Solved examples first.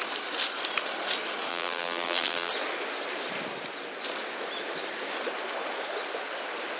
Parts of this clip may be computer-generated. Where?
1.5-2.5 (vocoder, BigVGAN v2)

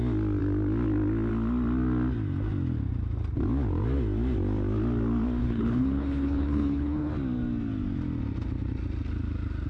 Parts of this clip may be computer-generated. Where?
5.4-7.1 (codec, HILCodec)

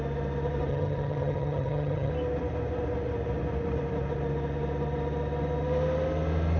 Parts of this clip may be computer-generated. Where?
0.7-2.1 (vocoder, HiFi-GAN)

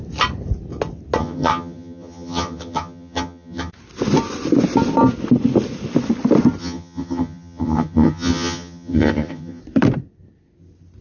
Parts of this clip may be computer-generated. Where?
1.2-3.7 (vocoder, HiFi-GAN); 6.6-9.6